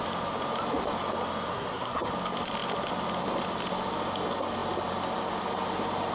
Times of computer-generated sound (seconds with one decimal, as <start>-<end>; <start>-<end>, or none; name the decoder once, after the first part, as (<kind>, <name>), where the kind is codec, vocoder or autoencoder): 1.5-2.1 (codec, SNAC)

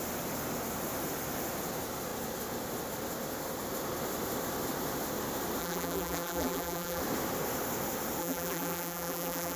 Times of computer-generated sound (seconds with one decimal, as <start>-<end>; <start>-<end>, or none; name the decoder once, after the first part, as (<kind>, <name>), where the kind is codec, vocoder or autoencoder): 5.6-7.0 (vocoder, BigVGAN v2); 8.2-9.6

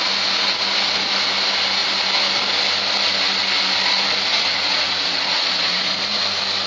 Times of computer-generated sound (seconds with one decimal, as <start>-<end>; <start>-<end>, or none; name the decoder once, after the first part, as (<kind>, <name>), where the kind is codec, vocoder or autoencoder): 4.3-6.2 (vocoder, Vocos)

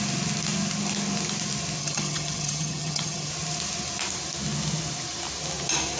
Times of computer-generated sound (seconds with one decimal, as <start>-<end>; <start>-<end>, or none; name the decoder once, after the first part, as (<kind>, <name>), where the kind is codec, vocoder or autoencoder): 1.8-3.3 (vocoder, HiFi-GAN)